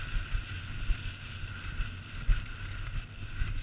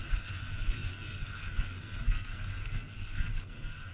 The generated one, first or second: second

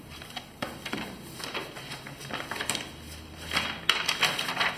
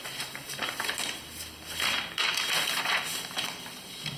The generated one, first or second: second